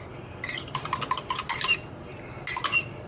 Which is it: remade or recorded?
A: recorded